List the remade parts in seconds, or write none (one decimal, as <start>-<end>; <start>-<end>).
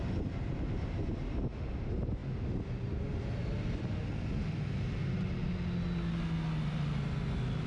none